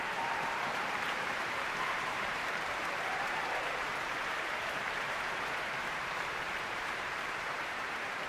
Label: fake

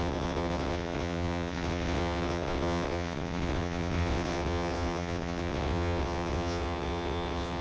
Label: fake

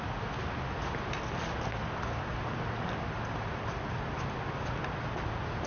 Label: real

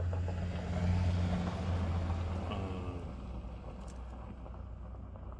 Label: real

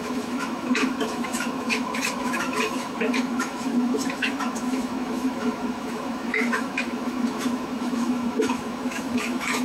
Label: fake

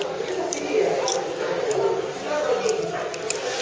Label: real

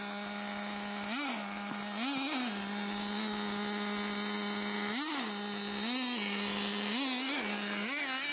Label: real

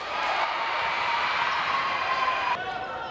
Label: fake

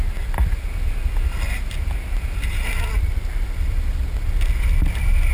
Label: real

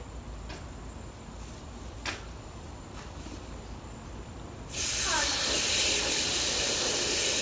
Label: real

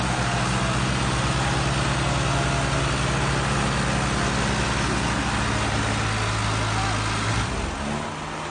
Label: real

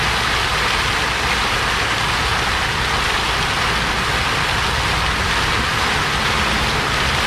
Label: real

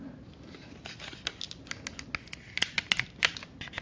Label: real